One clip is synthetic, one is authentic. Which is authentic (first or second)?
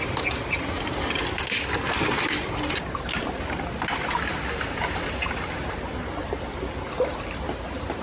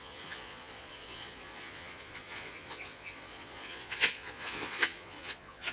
first